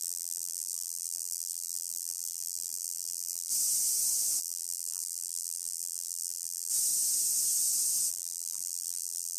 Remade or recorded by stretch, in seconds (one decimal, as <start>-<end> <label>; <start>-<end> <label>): 0.0-3.5 remade; 3.5-4.4 recorded; 4.4-6.7 remade; 6.7-8.1 recorded; 8.1-9.4 remade